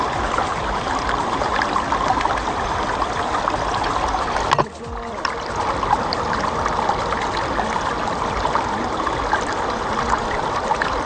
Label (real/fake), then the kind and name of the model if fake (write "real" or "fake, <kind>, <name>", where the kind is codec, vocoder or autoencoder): real